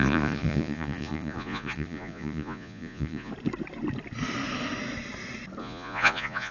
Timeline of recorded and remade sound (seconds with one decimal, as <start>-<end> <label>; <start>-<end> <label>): 0.0-3.3 remade; 3.3-5.6 recorded; 5.6-6.5 remade

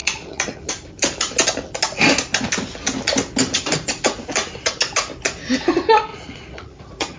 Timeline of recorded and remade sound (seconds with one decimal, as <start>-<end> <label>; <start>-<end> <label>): 0.0-0.7 remade; 0.7-6.1 recorded; 6.1-7.2 remade